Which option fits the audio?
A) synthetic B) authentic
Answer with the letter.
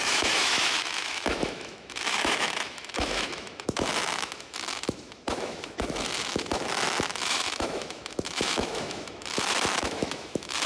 A